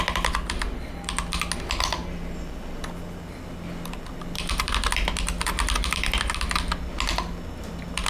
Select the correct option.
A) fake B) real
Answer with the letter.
B